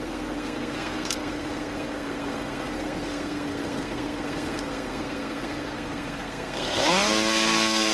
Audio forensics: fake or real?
fake